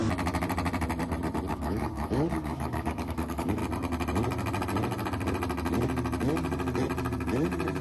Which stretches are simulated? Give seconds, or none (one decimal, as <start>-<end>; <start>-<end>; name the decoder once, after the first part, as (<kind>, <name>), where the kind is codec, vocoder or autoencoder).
1.5-3.6 (codec, DAC)